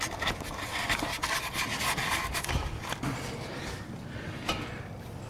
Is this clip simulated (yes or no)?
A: no